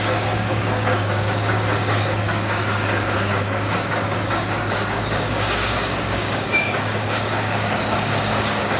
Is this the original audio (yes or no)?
no